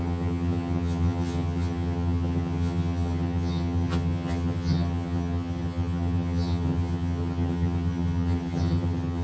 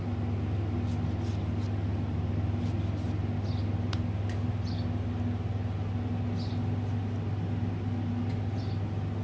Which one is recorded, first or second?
second